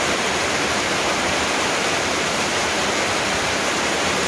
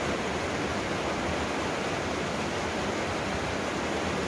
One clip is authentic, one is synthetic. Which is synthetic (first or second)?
first